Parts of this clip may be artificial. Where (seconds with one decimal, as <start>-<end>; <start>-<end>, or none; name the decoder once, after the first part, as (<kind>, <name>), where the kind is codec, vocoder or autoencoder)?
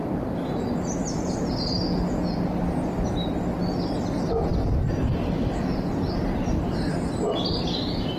none